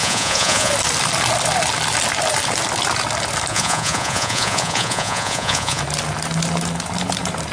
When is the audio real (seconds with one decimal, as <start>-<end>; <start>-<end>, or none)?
0.7-3.5; 5.8-7.5